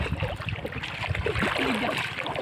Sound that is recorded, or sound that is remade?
recorded